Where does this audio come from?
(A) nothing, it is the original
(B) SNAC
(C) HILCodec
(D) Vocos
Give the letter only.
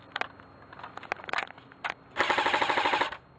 A